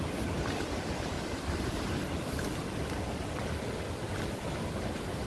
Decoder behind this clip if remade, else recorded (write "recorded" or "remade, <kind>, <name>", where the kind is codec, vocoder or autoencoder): recorded